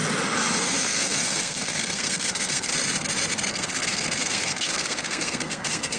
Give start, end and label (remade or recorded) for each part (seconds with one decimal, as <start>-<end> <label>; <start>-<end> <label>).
0.0-0.6 recorded; 0.6-2.7 remade; 2.7-3.5 recorded; 3.5-6.0 remade